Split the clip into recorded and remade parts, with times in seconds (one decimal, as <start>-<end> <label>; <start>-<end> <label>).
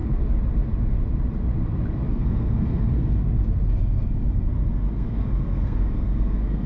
0.0-2.1 recorded; 2.1-3.2 remade; 3.2-3.7 recorded; 3.7-6.7 remade